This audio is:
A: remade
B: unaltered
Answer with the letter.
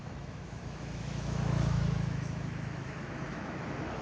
A